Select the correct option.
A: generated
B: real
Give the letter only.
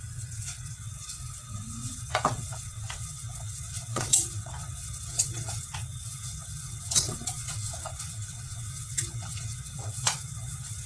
A